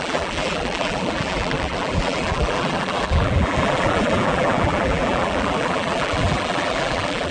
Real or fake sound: fake